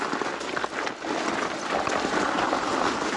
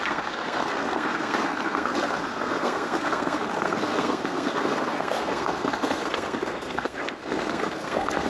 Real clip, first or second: first